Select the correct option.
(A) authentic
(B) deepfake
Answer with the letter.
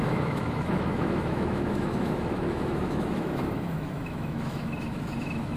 B